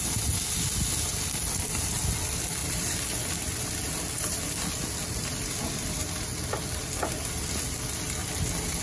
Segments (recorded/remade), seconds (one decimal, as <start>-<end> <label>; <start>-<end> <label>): 0.0-8.8 recorded